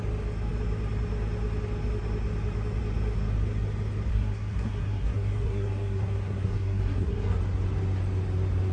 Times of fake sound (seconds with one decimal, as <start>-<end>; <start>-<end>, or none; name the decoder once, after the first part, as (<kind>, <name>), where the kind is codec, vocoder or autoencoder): 4.1-7.4 (codec, SNAC)